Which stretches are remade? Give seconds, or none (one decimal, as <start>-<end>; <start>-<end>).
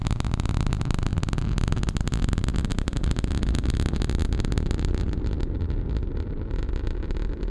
none